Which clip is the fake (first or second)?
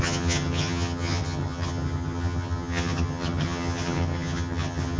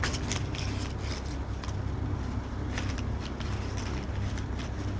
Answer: first